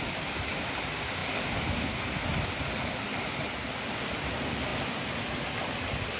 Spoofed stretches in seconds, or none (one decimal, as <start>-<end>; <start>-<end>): none